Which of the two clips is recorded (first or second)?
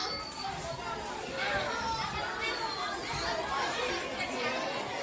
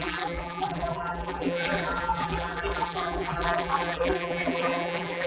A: first